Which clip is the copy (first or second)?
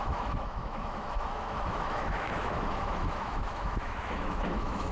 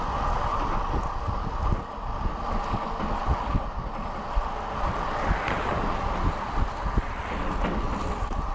first